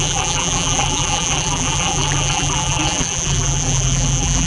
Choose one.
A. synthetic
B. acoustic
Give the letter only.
A